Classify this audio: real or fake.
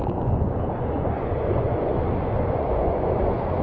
fake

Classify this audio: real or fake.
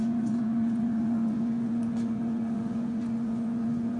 fake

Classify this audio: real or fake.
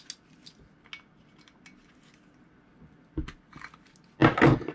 real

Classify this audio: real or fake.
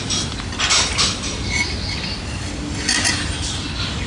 real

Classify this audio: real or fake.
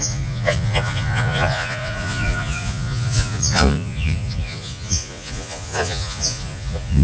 fake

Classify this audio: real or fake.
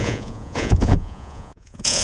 fake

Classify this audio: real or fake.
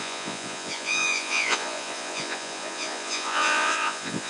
fake